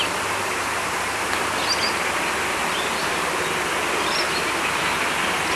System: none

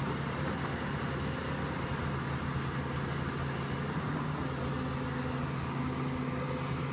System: none